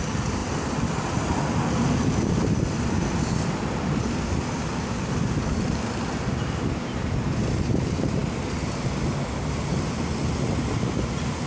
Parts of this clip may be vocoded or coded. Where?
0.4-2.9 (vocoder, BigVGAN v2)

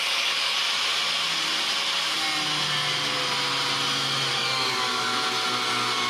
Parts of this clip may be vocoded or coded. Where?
0.0-0.6 (codec, DAC); 4.3-5.1

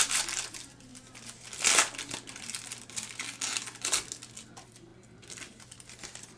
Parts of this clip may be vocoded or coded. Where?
0.0-0.9 (vocoder, BigVGAN v2); 4.4-4.9; 5.5-6.4

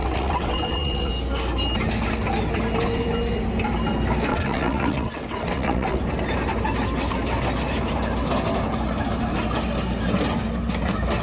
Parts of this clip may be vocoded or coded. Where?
0.0-1.1 (vocoder, WaveNeXt); 4.3-6.0

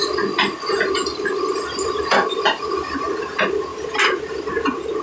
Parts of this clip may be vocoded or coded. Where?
0.0-3.0 (vocoder, BigVGAN v2); 3.7-4.5

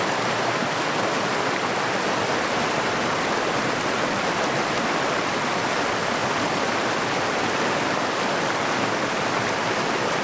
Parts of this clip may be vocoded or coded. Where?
none

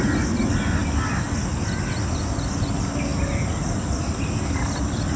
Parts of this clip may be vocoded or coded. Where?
none

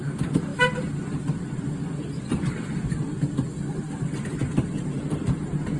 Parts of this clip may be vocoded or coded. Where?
none